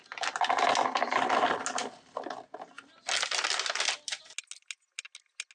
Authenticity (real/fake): real